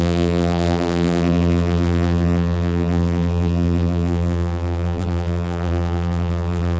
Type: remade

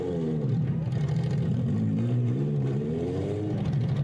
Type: remade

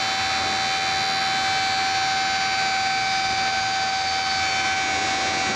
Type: recorded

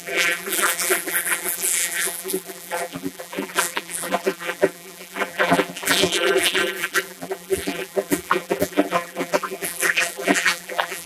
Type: remade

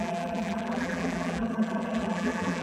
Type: remade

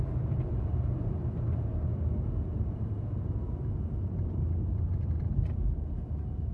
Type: remade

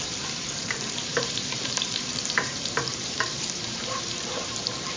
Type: remade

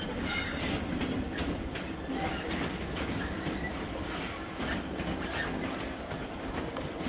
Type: recorded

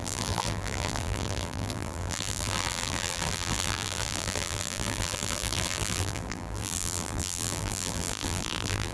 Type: remade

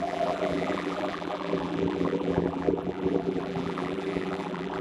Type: remade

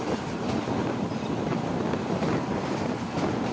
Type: recorded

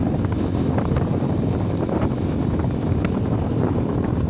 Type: remade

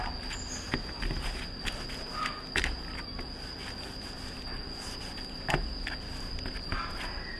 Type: recorded